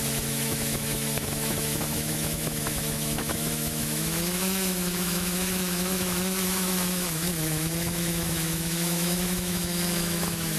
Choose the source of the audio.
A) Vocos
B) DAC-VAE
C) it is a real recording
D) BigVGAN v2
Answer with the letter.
B